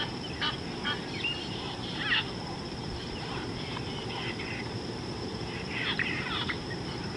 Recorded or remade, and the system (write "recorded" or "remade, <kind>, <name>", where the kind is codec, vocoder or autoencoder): remade, vocoder, BigVGAN v2